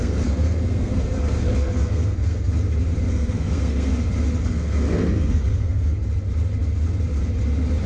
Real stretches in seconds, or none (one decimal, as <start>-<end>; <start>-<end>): 2.5-3.1; 3.9-4.4; 6.0-7.9